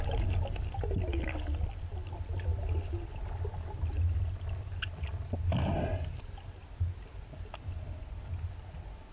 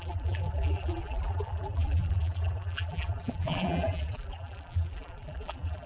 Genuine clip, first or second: first